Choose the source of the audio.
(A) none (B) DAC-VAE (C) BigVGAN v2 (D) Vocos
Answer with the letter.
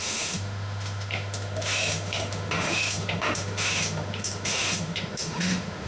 B